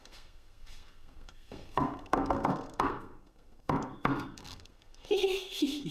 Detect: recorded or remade remade